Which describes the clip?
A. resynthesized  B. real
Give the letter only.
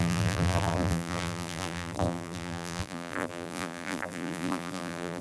A